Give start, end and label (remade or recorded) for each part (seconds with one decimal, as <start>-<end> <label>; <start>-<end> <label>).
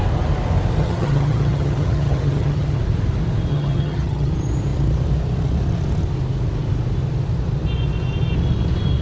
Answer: 0.0-0.8 recorded; 0.8-2.8 remade; 2.8-3.5 recorded; 3.5-4.3 remade; 4.3-9.0 recorded